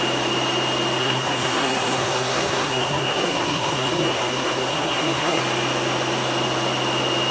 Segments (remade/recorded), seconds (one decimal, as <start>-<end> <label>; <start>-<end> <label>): 0.0-1.0 recorded; 1.0-5.4 remade; 5.4-7.3 recorded